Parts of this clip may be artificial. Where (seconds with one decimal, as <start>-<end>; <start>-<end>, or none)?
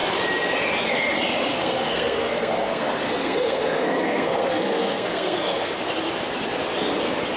1.5-5.9